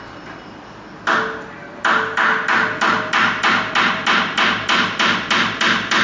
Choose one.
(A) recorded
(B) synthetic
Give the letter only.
A